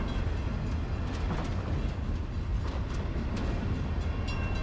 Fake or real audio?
real